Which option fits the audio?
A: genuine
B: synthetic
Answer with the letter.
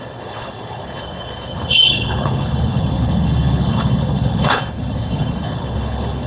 B